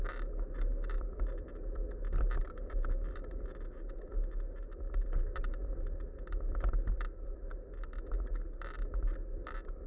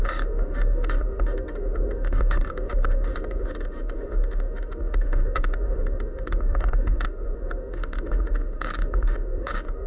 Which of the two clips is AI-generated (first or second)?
second